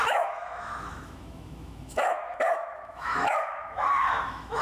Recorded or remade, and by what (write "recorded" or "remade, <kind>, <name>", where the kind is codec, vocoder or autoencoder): remade, autoencoder, DAC-VAE